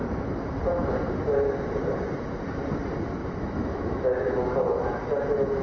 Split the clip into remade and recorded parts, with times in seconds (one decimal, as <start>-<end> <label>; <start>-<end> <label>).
0.0-3.2 recorded; 3.2-4.4 remade; 4.4-5.6 recorded